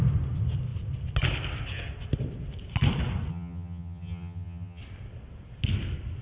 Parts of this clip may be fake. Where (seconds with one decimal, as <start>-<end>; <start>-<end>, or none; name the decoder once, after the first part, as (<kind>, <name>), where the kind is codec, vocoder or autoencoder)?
3.3-4.8 (vocoder, HiFi-GAN)